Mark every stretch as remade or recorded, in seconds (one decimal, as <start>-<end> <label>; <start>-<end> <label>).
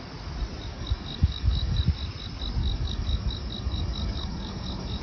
0.0-0.7 recorded; 0.7-1.8 remade; 1.8-2.6 recorded; 2.6-5.0 remade